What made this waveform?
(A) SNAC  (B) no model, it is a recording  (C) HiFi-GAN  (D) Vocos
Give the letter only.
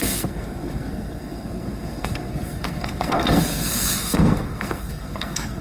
A